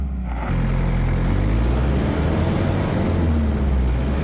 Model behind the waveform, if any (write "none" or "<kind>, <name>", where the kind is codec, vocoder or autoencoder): none